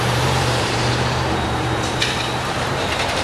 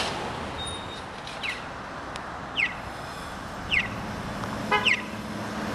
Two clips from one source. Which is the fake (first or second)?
first